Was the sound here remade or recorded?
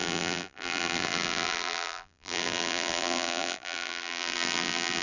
remade